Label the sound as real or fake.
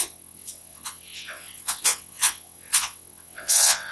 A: fake